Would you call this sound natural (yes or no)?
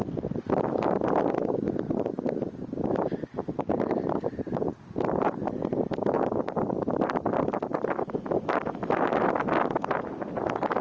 yes